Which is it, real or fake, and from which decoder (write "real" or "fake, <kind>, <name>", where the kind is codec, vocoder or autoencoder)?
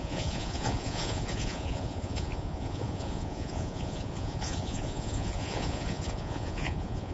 fake, vocoder, Vocos